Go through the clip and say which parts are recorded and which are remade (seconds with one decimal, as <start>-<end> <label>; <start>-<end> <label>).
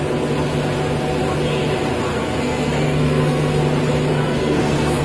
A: 0.0-2.1 recorded; 2.1-3.6 remade; 3.6-4.1 recorded; 4.1-5.0 remade